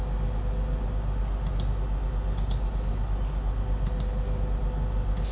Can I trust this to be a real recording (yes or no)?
yes